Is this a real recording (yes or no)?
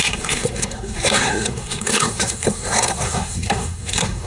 no